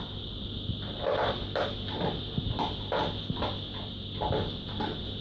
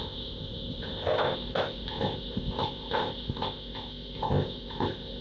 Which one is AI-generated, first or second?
second